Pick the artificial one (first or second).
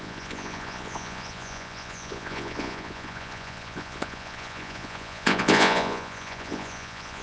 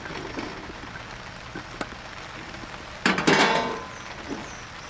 first